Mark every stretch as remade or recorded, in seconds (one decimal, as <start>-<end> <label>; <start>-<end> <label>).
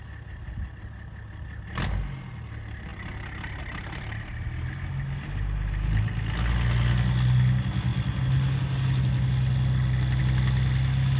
0.0-11.2 recorded